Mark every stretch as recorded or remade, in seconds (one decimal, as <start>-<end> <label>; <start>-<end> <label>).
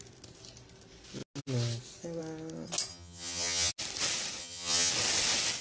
0.0-2.9 recorded; 2.9-3.7 remade; 3.7-4.4 recorded; 4.4-4.9 remade; 4.9-5.6 recorded